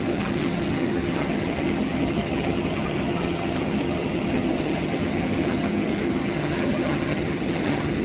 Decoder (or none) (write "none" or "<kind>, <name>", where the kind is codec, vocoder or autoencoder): vocoder, HiFi-GAN